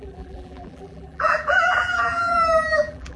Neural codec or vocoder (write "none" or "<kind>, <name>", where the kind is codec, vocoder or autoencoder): vocoder, BigVGAN v2